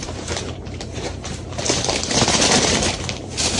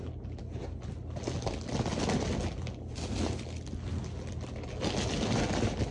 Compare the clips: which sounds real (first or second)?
second